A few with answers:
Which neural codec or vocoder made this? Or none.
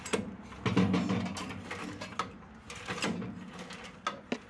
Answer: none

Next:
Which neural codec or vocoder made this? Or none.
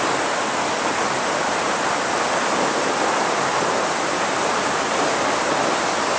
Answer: none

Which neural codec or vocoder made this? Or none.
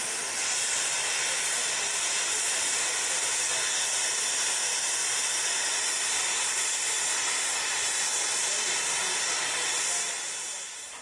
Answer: none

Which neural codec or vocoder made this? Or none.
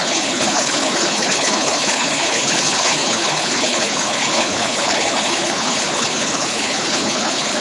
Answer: codec, HILCodec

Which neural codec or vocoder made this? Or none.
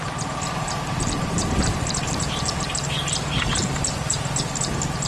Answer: vocoder, BigVGAN v2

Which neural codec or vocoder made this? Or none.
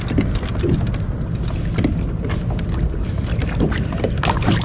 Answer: none